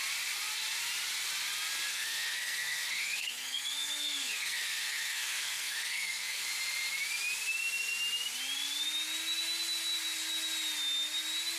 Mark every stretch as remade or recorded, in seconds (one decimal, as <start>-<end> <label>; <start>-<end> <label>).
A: 0.0-1.9 recorded; 1.9-6.4 remade; 6.4-11.6 recorded